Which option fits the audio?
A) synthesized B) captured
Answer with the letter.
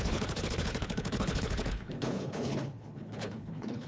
A